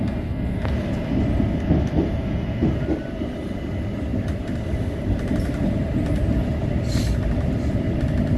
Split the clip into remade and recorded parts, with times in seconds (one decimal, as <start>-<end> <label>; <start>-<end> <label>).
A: 0.0-8.4 recorded